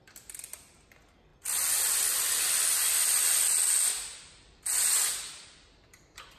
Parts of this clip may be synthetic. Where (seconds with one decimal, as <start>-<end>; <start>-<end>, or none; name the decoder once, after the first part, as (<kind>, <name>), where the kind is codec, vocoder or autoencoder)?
none